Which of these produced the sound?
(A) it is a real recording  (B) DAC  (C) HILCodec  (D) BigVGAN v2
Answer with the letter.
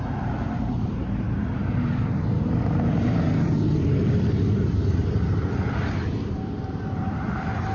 D